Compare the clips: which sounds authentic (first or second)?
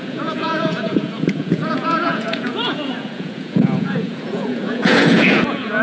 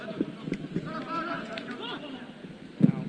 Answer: second